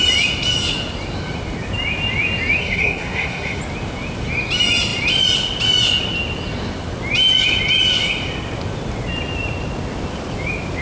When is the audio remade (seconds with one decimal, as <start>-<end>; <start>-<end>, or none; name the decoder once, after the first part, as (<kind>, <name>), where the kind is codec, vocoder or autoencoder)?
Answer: 2.6-3.6 (codec, SNAC)